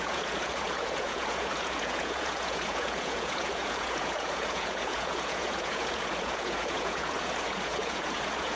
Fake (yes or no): yes